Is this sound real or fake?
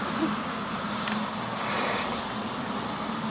real